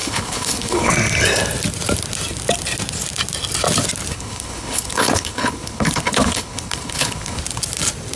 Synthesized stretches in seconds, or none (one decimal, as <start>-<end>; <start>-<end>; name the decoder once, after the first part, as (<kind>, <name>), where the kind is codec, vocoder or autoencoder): 0.0-0.9 (codec, HILCodec); 4.1-7.4